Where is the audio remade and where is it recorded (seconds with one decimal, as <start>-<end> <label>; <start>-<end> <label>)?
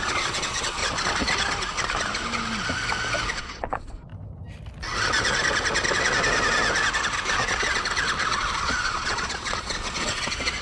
0.0-0.8 remade; 0.8-3.4 recorded; 3.4-4.1 remade; 4.1-8.3 recorded; 8.3-10.6 remade